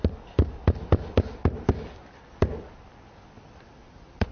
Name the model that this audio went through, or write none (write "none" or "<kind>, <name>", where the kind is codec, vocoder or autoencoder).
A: none